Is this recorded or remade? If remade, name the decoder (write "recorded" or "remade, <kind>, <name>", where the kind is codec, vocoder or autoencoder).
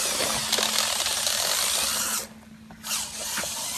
recorded